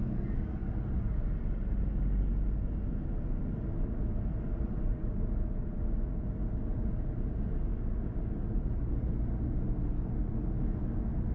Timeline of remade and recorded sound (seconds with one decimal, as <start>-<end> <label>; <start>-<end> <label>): 0.0-11.3 recorded

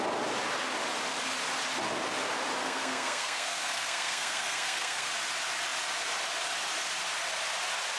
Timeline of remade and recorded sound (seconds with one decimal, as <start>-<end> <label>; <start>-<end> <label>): 0.0-2.6 recorded; 2.6-5.1 remade; 5.1-8.0 recorded

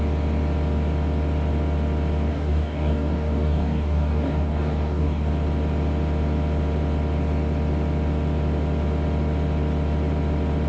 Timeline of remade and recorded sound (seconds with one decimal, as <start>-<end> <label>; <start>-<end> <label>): 0.0-2.3 recorded; 2.3-5.3 remade; 5.3-10.7 recorded

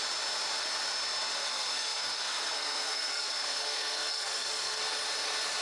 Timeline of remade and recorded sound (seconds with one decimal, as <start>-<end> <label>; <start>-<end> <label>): 0.0-1.4 recorded; 1.4-4.8 remade; 4.8-5.6 recorded

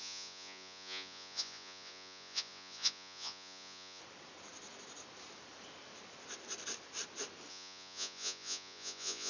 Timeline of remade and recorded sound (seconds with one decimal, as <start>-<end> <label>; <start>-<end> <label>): 0.0-4.0 remade; 4.0-7.5 recorded; 7.5-9.3 remade